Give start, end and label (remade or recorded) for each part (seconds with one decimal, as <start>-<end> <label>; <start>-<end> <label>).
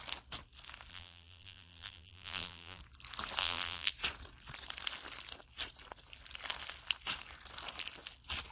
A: 0.0-0.9 recorded; 0.9-2.8 remade; 2.8-3.4 recorded; 3.4-3.9 remade; 3.9-8.5 recorded